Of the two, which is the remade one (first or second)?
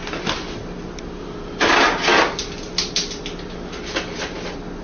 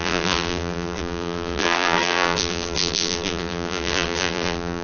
second